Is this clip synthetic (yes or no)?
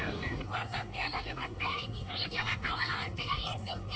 yes